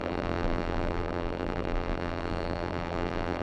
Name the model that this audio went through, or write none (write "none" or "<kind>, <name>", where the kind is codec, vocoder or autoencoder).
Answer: vocoder, BigVGAN v2